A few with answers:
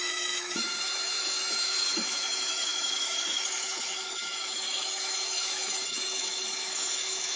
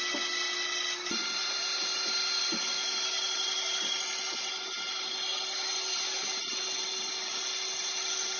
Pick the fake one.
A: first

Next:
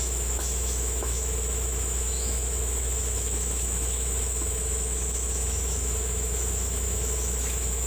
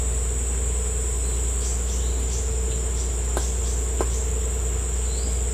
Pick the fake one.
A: first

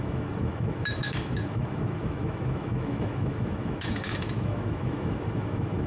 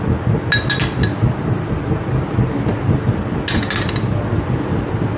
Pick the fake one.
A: first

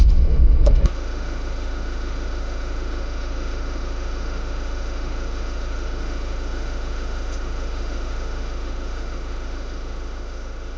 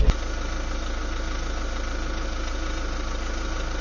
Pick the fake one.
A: first